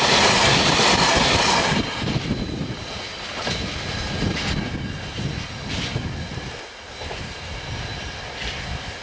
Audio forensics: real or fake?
real